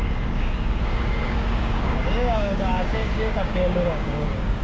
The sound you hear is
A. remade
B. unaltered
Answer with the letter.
A